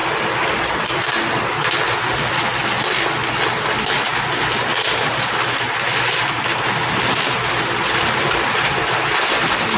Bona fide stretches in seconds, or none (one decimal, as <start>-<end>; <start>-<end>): 0.0-9.8